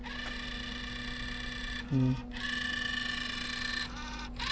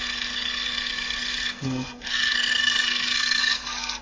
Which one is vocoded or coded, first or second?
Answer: second